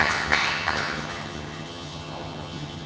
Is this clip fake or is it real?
fake